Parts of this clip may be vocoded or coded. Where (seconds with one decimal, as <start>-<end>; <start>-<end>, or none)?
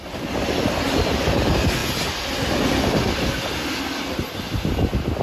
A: none